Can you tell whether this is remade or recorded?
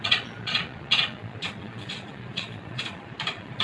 remade